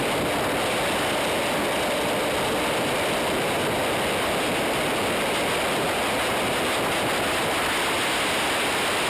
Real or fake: real